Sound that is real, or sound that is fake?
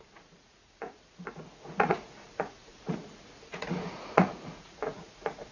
fake